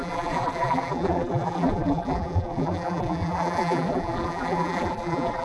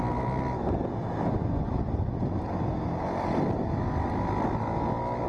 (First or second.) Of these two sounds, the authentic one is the second